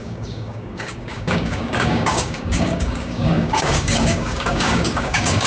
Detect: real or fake fake